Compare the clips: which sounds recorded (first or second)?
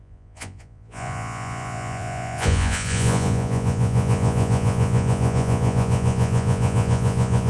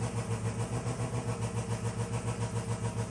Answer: second